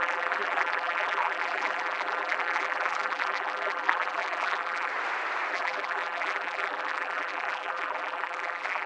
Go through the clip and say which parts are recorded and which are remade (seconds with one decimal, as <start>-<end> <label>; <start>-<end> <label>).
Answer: 0.0-4.9 remade; 4.9-5.5 recorded; 5.5-8.9 remade